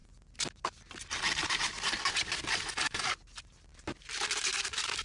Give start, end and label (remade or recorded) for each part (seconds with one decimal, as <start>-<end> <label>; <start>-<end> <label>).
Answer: 0.0-5.0 recorded